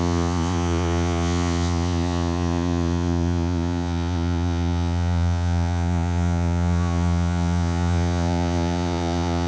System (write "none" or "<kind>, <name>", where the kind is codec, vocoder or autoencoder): vocoder, Vocos